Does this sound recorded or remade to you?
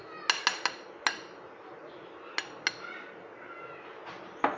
recorded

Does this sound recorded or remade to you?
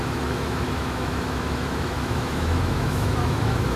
remade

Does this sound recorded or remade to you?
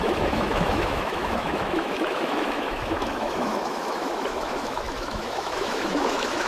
remade